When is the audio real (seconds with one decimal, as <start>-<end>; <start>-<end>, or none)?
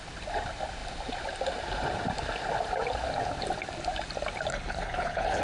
0.0-4.5